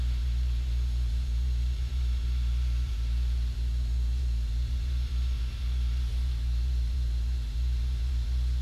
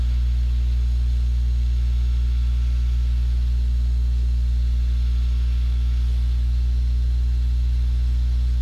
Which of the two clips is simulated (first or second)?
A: first